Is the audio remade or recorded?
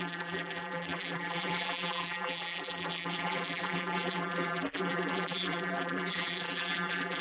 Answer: remade